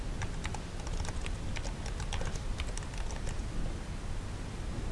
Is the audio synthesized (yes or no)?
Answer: no